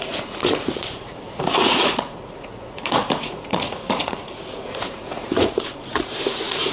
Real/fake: fake